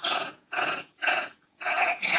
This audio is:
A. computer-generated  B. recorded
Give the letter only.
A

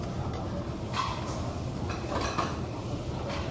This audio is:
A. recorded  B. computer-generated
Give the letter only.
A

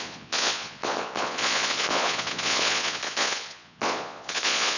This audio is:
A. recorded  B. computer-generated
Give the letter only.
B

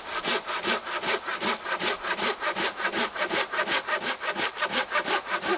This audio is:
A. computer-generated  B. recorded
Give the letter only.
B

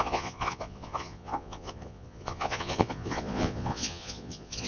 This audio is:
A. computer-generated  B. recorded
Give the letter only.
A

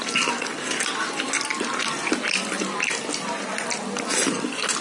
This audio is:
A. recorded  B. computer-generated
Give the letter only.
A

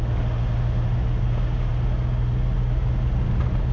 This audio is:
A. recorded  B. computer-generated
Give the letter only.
A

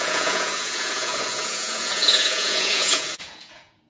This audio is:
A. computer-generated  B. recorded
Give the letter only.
A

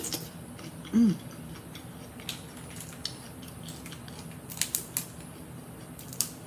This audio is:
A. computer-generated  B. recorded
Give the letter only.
B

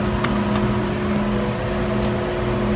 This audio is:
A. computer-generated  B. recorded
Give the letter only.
B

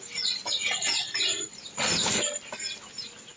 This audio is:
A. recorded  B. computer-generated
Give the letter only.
A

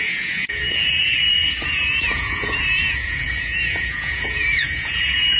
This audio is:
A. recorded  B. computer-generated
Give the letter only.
B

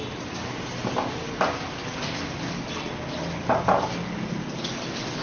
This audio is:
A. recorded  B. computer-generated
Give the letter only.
A